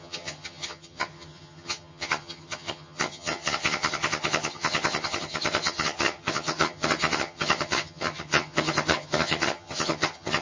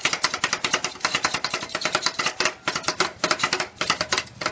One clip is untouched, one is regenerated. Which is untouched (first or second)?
second